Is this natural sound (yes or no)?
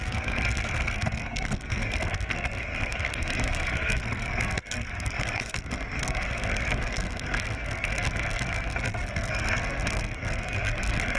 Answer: no